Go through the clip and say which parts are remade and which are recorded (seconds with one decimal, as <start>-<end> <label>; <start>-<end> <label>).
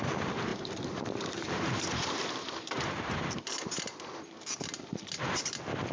0.0-0.5 recorded; 0.5-4.0 remade; 4.0-5.9 recorded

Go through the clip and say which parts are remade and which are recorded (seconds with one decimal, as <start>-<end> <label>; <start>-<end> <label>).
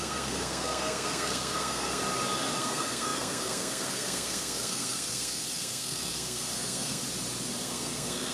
0.0-2.0 remade; 2.0-2.6 recorded; 2.6-7.0 remade; 7.0-7.6 recorded; 7.6-8.3 remade